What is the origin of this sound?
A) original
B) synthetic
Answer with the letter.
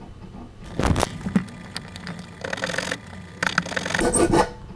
A